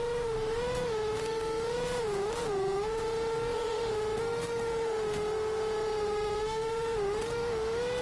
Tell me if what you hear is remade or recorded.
remade